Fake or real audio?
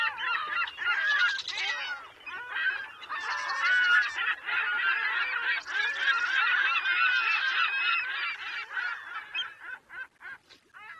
real